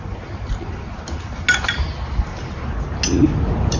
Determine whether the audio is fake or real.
real